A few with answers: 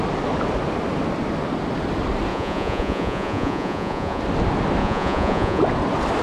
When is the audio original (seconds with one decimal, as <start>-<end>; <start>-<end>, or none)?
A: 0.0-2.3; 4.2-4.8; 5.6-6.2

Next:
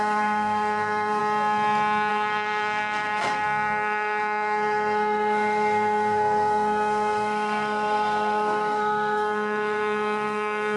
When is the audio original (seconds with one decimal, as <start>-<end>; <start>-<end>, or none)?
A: 1.2-2.1

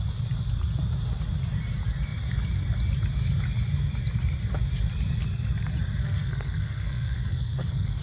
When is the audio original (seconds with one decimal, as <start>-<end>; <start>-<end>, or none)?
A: 0.0-6.0

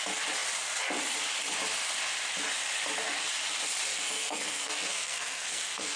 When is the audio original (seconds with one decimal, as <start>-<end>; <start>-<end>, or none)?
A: 0.0-3.9

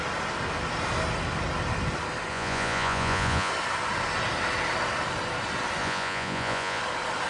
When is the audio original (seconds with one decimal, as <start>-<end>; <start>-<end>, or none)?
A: 0.0-2.3; 3.5-5.8; 6.8-7.3

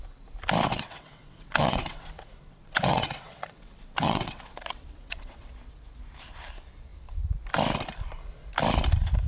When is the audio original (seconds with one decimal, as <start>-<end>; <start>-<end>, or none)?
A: 0.0-0.7; 5.5-9.3

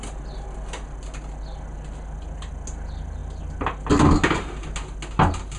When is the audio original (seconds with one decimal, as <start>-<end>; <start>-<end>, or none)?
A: 0.0-5.6

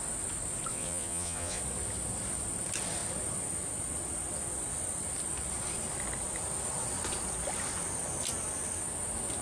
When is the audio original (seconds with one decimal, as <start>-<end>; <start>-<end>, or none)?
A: 0.0-0.7; 1.6-9.4